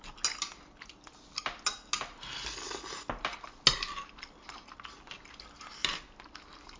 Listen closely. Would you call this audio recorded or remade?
recorded